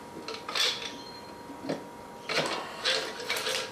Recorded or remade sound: recorded